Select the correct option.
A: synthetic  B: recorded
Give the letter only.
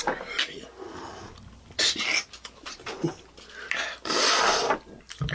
B